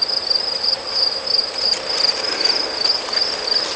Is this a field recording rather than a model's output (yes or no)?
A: yes